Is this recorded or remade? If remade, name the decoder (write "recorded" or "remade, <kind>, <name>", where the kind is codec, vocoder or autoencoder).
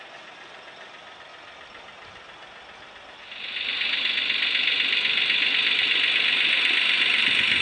recorded